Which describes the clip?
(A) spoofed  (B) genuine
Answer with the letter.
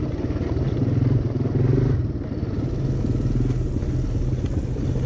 B